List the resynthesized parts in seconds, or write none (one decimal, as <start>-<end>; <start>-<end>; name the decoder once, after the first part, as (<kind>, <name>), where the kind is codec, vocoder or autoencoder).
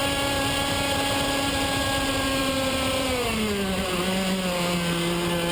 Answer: 2.4-3.2 (vocoder, BigVGAN v2)